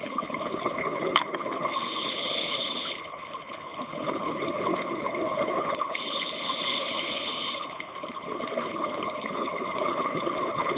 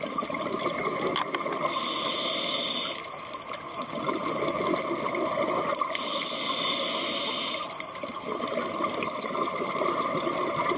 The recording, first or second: second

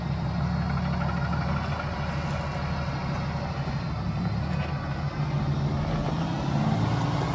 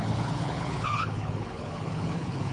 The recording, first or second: first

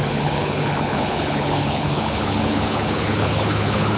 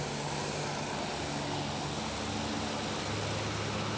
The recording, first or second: second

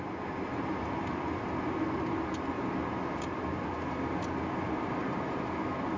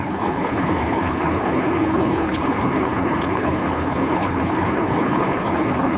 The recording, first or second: first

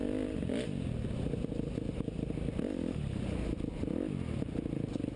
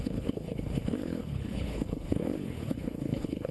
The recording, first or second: first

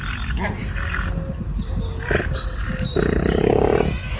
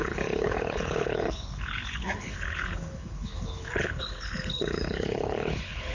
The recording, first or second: first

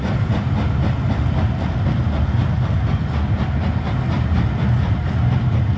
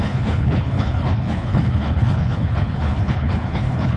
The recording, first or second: first